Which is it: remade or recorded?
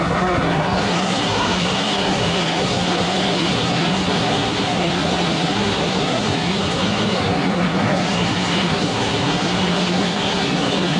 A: remade